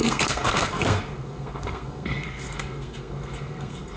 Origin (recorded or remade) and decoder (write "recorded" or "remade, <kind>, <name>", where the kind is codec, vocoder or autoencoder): remade, codec, SNAC